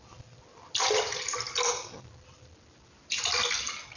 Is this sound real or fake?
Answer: real